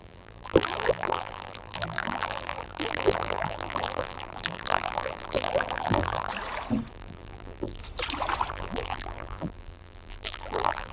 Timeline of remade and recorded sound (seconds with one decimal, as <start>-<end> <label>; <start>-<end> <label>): 0.0-6.3 remade; 6.3-6.9 recorded; 6.9-7.8 remade; 7.8-8.5 recorded; 8.5-10.9 remade